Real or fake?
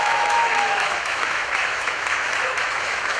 fake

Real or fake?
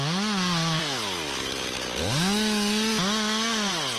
real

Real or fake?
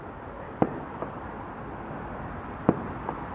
real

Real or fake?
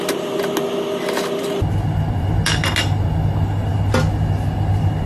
real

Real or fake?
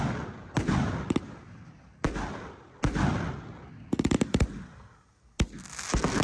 real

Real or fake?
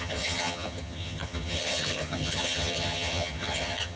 fake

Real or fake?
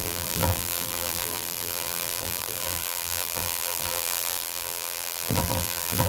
fake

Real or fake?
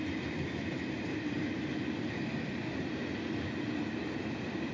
real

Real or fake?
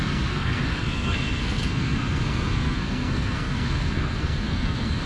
fake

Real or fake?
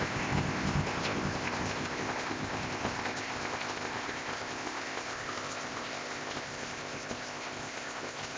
fake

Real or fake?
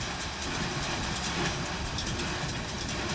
fake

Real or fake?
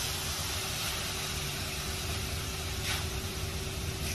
real